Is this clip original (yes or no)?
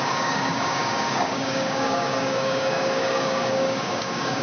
no